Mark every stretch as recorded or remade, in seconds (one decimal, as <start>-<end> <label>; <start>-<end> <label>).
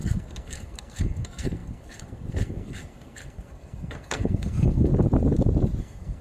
0.0-4.9 remade; 4.9-5.8 recorded; 5.8-6.2 remade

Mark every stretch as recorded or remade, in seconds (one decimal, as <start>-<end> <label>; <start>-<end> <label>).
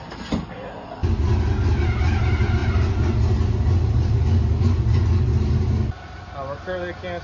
0.0-7.2 recorded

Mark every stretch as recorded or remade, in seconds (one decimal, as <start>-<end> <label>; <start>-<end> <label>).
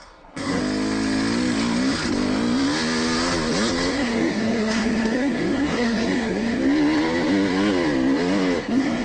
0.0-0.6 remade; 0.6-3.9 recorded; 3.9-6.6 remade; 6.6-8.6 recorded; 8.6-9.0 remade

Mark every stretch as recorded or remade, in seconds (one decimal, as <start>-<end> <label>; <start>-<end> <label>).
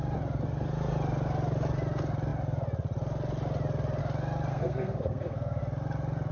0.0-4.5 recorded; 4.5-5.6 remade; 5.6-6.3 recorded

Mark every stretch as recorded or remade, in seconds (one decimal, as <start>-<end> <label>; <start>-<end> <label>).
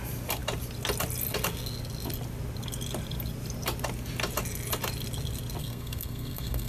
0.0-5.6 recorded; 5.6-6.7 remade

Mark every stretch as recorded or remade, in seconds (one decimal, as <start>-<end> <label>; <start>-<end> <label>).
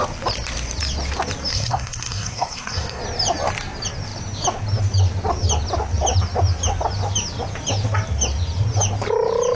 0.0-1.5 recorded; 1.5-3.0 remade; 3.0-9.5 recorded